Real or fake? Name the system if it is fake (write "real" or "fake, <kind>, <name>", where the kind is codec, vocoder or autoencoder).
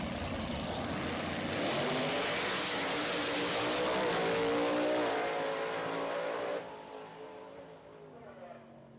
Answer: real